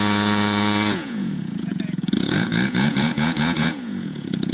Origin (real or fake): fake